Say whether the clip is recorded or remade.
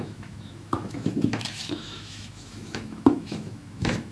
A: remade